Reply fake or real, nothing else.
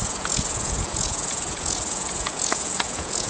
fake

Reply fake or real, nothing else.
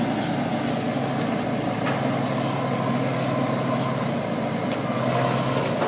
real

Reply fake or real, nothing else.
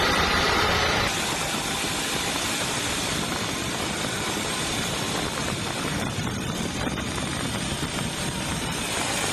fake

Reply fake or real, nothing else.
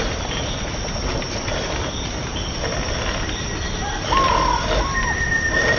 real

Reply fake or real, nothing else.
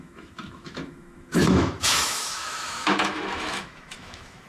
fake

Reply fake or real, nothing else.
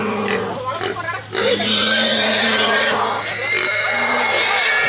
real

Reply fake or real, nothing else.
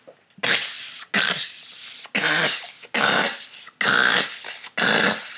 real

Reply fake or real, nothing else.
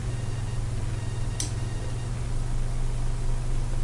real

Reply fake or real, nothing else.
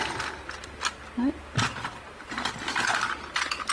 real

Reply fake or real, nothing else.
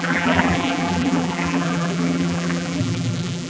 fake